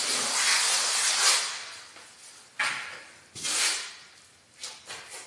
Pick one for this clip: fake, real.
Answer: real